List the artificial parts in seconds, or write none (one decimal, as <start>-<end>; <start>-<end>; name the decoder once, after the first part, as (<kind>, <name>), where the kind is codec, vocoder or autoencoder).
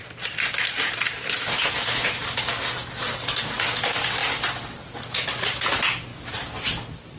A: none